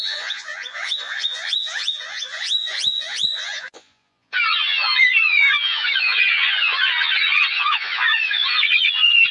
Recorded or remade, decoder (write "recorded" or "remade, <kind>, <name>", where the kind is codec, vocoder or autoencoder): remade, vocoder, Vocos